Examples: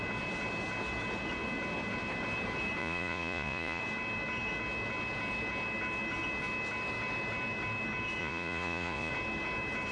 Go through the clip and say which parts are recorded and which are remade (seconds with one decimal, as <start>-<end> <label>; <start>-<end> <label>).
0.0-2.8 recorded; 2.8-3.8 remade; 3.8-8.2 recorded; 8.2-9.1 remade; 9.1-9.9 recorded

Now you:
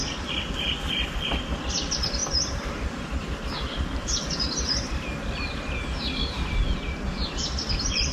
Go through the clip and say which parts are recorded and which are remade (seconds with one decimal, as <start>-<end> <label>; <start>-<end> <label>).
0.0-2.2 recorded; 2.2-3.1 remade; 3.1-8.1 recorded

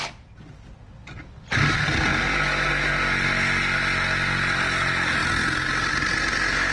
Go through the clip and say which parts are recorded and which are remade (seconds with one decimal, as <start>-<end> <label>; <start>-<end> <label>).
0.0-6.7 recorded

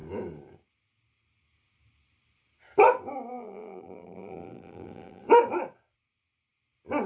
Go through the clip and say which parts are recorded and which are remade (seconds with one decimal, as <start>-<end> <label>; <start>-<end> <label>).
0.0-3.3 recorded; 3.3-5.2 remade; 5.2-7.1 recorded